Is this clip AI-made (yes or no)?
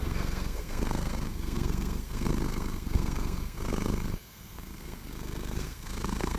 yes